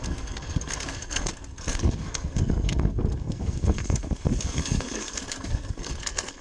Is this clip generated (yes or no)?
yes